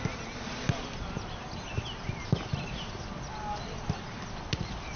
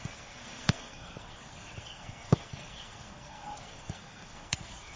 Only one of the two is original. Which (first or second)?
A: first